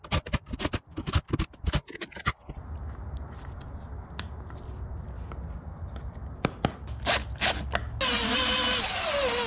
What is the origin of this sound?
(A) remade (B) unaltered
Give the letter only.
B